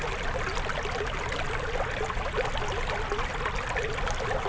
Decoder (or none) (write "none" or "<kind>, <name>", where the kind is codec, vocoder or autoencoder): none